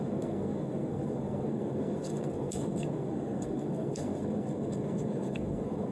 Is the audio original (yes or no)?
no